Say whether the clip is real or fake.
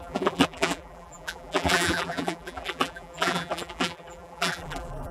fake